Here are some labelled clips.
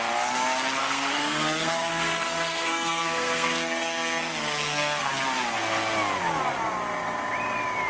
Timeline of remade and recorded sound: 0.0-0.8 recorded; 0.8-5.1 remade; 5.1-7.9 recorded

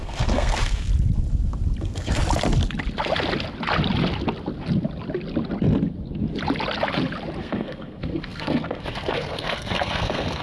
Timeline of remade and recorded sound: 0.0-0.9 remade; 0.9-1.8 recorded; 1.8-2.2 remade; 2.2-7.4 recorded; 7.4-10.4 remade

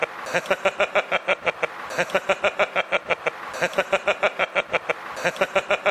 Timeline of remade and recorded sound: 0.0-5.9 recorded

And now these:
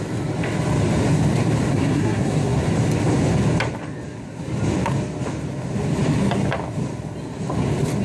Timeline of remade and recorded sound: 0.0-1.7 recorded; 1.7-2.6 remade; 2.6-8.0 recorded

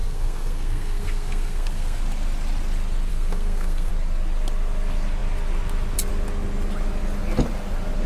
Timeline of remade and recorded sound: 0.0-2.0 remade; 2.0-3.1 recorded; 3.1-3.9 remade; 3.9-8.1 recorded

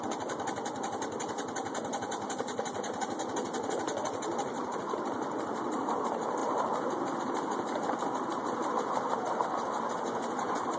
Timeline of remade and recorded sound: 0.0-10.8 recorded

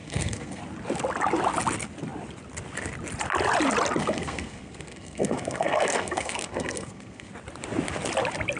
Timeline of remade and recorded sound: 0.0-0.6 remade; 0.6-4.0 recorded; 4.0-7.3 remade; 7.3-8.6 recorded